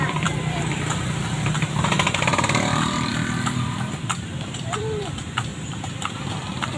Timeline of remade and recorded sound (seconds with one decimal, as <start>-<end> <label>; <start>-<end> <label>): 0.0-3.1 remade; 3.1-4.0 recorded; 4.0-6.8 remade